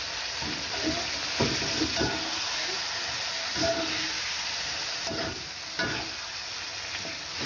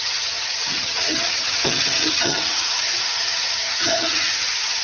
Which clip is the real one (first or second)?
first